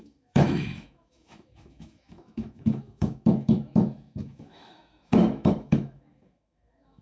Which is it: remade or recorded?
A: remade